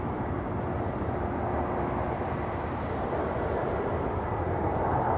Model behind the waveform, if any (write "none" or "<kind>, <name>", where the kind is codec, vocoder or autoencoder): none